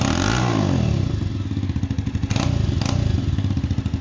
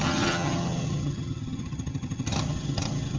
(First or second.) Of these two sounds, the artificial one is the second